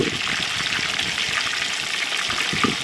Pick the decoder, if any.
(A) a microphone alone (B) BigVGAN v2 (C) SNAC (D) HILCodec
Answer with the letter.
A